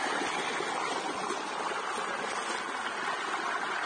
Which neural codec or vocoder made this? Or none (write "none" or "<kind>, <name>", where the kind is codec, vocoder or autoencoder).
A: none